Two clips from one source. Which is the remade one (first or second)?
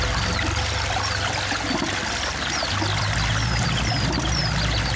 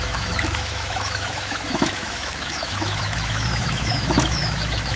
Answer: second